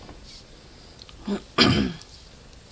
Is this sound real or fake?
real